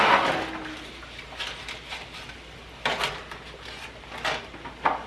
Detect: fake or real real